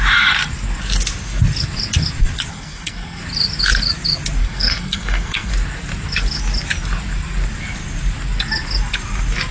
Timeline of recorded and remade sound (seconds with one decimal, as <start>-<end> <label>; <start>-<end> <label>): 0.0-2.5 recorded; 2.5-3.2 remade; 3.2-4.4 recorded; 4.4-5.5 remade; 5.5-9.5 recorded